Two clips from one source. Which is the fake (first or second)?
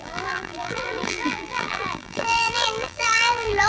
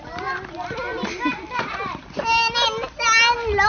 first